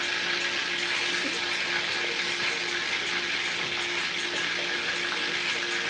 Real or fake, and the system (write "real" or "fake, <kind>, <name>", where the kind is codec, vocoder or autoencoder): real